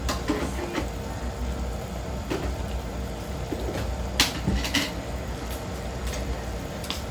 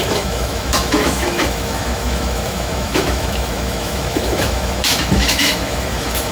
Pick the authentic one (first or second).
first